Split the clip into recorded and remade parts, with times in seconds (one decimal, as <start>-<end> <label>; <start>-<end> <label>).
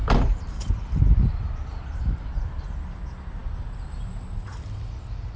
0.0-1.0 remade; 1.0-1.7 recorded; 1.7-2.3 remade; 2.3-5.4 recorded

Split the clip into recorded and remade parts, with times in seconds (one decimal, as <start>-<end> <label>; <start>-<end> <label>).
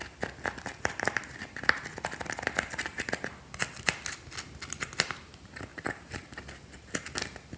0.0-5.7 recorded; 5.7-6.4 remade; 6.4-7.6 recorded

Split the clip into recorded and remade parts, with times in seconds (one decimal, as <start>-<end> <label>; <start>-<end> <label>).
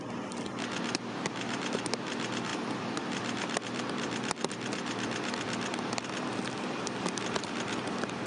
0.0-2.5 recorded; 2.5-7.5 remade; 7.5-8.3 recorded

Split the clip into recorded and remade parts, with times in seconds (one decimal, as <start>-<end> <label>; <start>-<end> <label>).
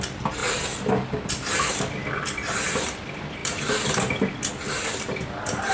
0.0-5.7 remade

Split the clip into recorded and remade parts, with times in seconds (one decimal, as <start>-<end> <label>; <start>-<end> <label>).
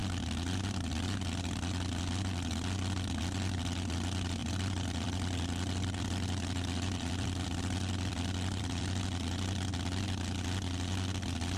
0.0-4.4 recorded; 4.4-9.0 remade; 9.0-11.6 recorded